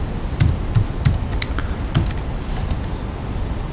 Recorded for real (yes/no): yes